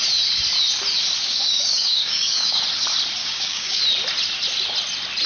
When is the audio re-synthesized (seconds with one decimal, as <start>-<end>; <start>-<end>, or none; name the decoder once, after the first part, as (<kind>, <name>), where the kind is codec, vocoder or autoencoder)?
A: 1.2-2.6 (codec, DAC); 3.2-3.8